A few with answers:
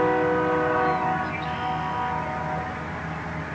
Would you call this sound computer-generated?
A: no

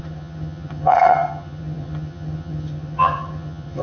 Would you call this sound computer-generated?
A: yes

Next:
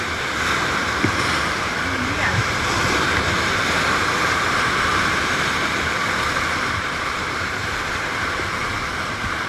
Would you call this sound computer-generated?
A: yes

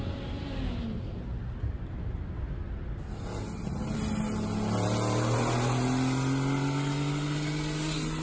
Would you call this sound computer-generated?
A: no